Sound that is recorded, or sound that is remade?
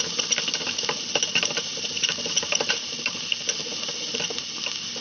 recorded